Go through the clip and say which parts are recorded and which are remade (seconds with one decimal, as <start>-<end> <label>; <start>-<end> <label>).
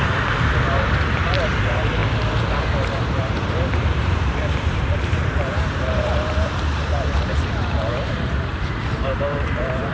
0.0-2.0 remade; 2.0-2.6 recorded; 2.6-9.9 remade